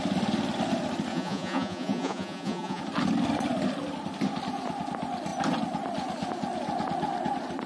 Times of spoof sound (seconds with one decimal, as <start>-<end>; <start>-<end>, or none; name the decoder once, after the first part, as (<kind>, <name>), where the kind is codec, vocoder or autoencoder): 1.1-2.8 (vocoder, Vocos)